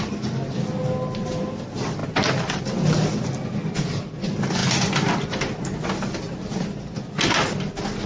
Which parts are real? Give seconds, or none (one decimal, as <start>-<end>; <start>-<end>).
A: 0.0-8.1

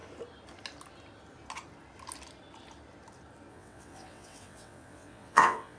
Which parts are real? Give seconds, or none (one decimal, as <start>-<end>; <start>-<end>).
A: 0.0-3.5